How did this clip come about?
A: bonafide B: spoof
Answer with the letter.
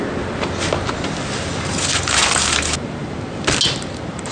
A